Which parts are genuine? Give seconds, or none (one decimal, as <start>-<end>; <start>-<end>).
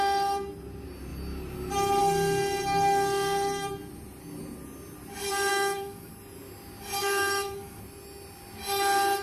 0.0-5.5; 6.1-7.0; 7.8-9.2